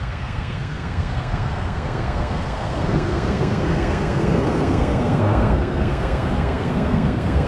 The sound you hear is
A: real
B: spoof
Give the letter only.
B